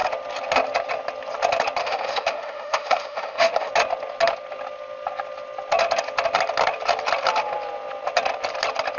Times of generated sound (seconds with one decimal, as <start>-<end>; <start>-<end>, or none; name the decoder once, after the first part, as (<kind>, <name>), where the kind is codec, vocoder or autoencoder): 1.8-3.7 (autoencoder, DAC-VAE)